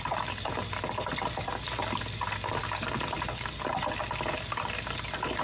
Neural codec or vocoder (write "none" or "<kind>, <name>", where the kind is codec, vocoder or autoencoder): none